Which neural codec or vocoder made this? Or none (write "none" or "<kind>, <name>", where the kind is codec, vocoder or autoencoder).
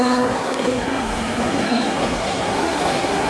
codec, SNAC